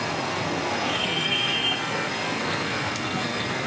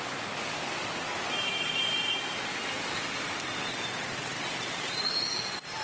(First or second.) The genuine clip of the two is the second